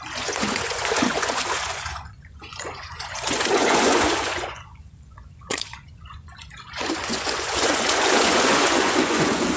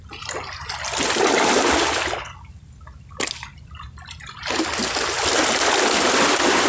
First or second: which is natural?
second